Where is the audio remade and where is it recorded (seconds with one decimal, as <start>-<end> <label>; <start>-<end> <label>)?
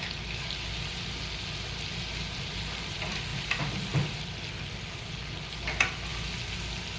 0.0-7.0 recorded